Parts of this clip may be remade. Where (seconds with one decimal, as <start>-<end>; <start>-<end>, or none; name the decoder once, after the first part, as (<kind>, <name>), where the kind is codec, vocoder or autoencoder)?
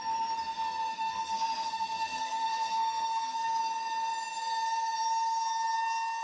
0.9-3.6 (codec, SNAC)